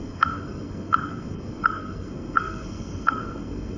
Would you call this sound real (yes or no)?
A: no